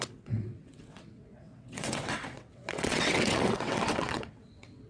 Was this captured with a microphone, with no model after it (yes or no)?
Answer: no